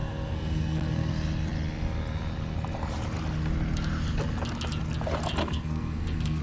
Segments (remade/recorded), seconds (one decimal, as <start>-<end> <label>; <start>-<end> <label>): 0.0-1.1 remade; 1.1-5.4 recorded; 5.4-6.4 remade